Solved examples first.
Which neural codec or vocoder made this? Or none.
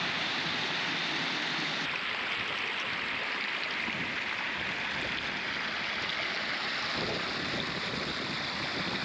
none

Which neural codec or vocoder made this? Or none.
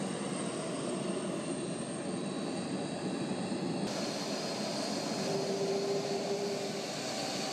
none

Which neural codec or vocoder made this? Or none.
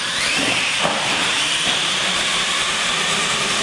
vocoder, BigVGAN v2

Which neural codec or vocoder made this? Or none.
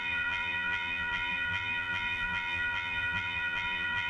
vocoder, BigVGAN v2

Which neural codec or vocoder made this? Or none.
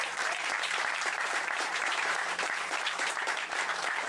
vocoder, BigVGAN v2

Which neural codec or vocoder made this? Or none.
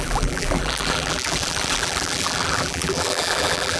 vocoder, BigVGAN v2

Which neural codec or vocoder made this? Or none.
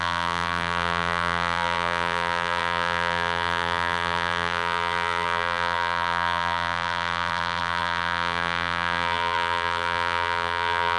vocoder, BigVGAN v2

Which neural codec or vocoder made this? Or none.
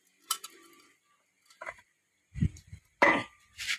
vocoder, BigVGAN v2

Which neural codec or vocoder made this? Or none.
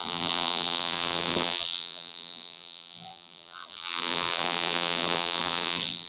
vocoder, BigVGAN v2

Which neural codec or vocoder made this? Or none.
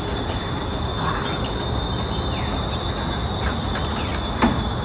none